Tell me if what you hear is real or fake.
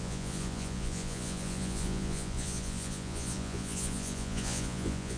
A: fake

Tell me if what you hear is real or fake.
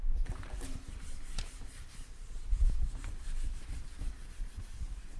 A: fake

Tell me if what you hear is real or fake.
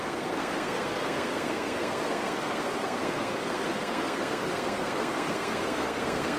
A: fake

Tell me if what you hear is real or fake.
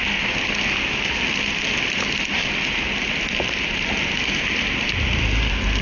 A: real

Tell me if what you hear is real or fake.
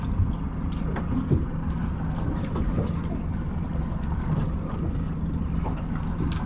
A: real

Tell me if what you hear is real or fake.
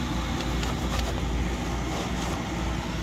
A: real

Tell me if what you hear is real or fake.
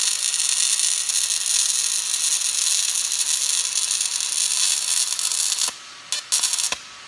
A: real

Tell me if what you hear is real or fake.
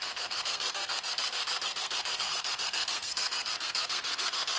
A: fake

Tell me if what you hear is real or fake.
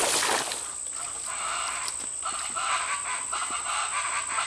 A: real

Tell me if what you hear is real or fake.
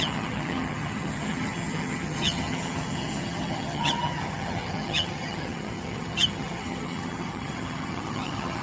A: fake